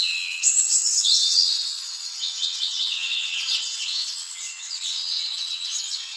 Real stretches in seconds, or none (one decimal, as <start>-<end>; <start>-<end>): none